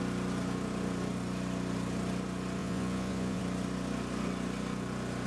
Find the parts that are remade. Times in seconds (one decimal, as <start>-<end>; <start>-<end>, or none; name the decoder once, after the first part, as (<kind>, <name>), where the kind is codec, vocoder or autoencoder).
2.6-3.4 (vocoder, Vocos)